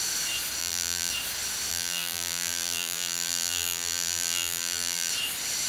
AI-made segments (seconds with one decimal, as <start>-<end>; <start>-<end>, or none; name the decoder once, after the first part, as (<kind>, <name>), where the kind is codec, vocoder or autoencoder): 0.6-1.1 (vocoder, BigVGAN v2); 1.7-5.1

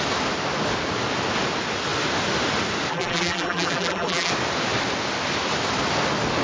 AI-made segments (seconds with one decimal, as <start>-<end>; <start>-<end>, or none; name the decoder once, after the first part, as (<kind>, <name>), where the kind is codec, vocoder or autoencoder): 2.9-4.3 (vocoder, BigVGAN v2)

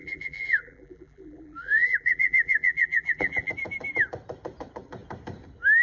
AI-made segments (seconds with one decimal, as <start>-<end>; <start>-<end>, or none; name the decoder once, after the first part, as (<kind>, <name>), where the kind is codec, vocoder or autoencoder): 0.0-3.5 (vocoder, BigVGAN v2)

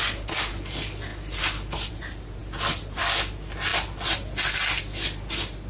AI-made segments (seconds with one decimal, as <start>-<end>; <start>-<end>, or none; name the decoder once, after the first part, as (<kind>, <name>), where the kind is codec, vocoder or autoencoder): 1.1-1.9 (vocoder, BigVGAN v2)

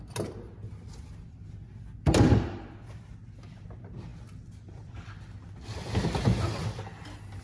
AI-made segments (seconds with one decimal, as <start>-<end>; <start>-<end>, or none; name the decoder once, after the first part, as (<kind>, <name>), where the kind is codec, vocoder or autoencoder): none

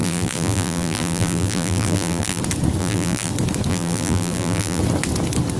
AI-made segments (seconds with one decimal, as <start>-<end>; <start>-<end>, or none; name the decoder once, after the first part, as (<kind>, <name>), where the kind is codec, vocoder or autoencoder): 0.0-2.4 (vocoder, BigVGAN v2); 2.8-3.3; 3.7-4.8

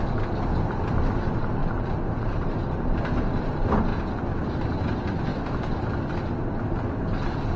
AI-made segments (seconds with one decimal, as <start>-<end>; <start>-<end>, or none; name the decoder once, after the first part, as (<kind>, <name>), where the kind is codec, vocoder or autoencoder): 1.6-2.8 (vocoder, BigVGAN v2); 5.3-5.9